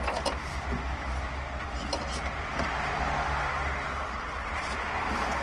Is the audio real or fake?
real